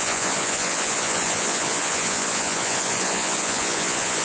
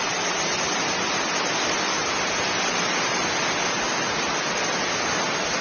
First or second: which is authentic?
second